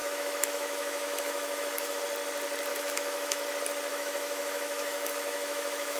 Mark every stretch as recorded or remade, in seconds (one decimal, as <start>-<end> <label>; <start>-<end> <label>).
0.0-2.0 remade; 2.0-2.7 recorded; 2.7-3.4 remade; 3.4-3.9 recorded; 3.9-6.0 remade